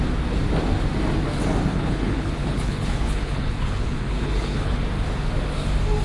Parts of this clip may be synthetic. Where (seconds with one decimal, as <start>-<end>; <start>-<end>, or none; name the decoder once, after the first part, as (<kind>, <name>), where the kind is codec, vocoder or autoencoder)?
1.7-4.8 (codec, HILCodec)